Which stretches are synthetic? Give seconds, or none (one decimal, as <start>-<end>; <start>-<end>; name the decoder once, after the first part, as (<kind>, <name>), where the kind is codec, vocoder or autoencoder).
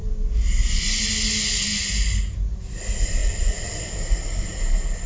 none